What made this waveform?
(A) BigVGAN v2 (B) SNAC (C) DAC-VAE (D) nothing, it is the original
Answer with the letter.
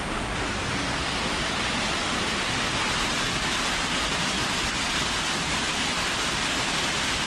D